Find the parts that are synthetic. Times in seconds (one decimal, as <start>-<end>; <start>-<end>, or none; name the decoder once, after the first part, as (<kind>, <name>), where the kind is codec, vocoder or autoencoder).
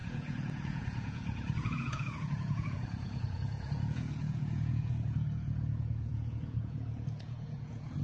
0.0-8.0 (vocoder, Vocos)